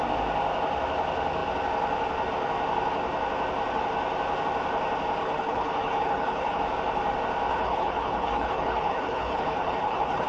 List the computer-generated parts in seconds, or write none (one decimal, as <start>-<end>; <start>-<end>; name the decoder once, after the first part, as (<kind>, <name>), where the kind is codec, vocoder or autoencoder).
5.2-6.6 (codec, HILCodec); 7.5-10.3